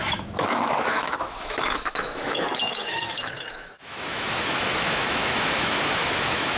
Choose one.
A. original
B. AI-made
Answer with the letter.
B